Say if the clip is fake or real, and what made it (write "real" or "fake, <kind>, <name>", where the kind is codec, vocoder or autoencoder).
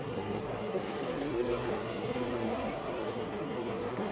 fake, codec, SNAC